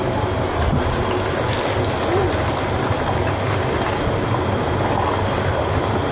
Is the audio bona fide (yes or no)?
yes